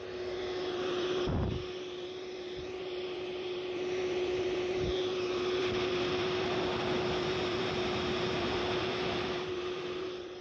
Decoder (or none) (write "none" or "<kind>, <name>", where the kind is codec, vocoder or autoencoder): vocoder, BigVGAN v2